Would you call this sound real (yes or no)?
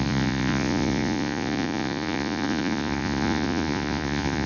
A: no